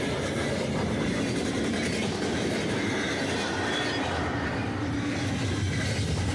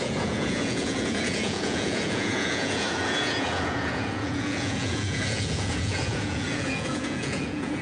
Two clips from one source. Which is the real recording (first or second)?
first